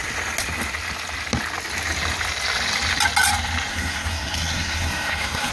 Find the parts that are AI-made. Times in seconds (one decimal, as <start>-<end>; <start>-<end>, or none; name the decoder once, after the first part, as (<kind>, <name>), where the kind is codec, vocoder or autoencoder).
3.7-5.5 (codec, SNAC)